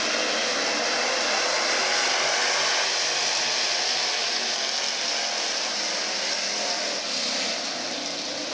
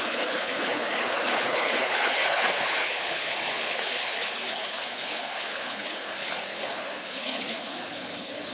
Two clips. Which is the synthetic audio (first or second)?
second